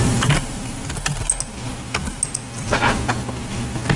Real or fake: real